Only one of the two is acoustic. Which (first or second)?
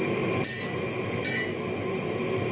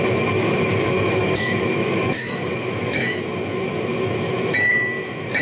first